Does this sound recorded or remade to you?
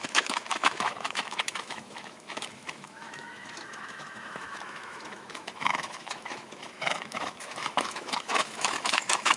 remade